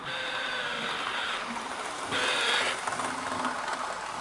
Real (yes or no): yes